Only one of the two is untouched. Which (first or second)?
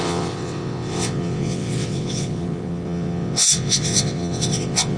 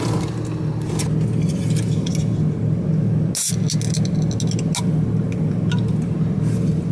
second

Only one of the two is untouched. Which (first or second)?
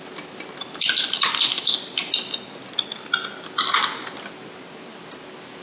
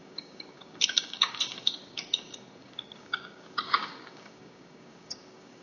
first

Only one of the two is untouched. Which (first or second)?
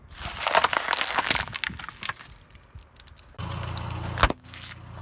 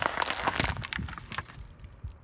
first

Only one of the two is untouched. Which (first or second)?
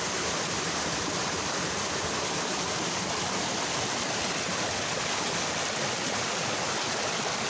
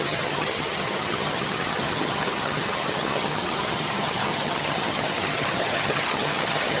first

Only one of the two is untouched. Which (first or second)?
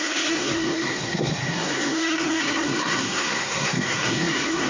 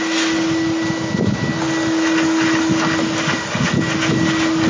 second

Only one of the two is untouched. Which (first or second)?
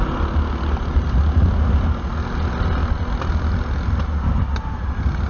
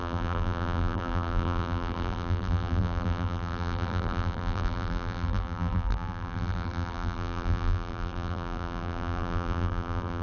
first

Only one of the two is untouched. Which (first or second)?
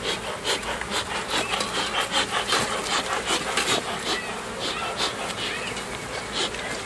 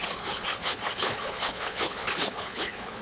first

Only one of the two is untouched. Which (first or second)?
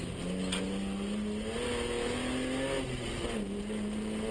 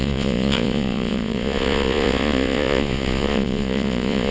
first